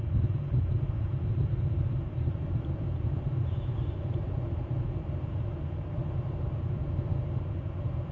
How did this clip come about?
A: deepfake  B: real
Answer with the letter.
A